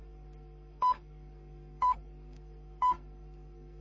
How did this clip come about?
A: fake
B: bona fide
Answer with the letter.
A